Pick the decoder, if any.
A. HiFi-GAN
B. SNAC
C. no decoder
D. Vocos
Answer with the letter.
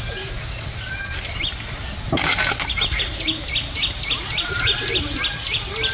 C